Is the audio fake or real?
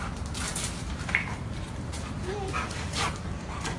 real